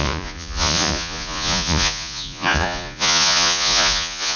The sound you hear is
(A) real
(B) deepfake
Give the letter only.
B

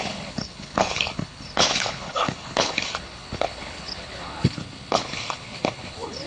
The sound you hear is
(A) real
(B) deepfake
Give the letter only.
B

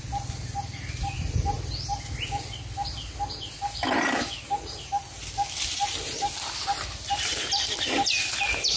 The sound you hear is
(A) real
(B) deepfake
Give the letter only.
A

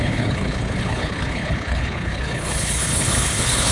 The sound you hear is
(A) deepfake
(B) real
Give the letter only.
A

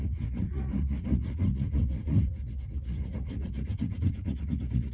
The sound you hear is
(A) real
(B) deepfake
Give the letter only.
B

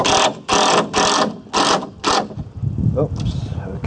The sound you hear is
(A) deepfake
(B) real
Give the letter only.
B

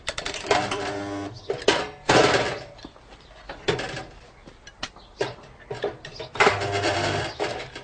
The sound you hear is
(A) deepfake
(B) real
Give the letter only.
A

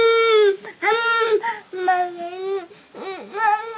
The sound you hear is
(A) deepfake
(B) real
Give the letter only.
B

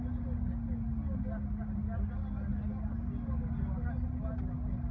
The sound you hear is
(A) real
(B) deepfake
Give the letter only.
A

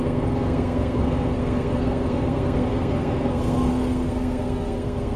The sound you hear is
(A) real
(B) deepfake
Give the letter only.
B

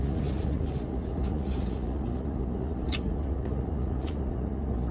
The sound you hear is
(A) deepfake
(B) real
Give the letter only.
A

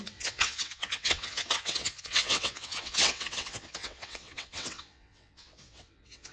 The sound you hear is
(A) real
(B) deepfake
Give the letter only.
B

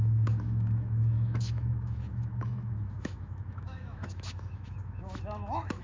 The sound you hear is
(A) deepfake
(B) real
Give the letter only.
A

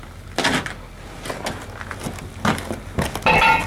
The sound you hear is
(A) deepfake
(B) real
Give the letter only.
B